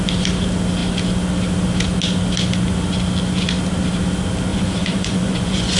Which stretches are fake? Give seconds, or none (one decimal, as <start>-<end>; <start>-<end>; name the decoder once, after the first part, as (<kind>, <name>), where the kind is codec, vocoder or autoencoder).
4.5-5.8 (vocoder, Vocos)